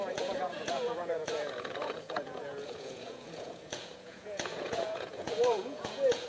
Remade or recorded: remade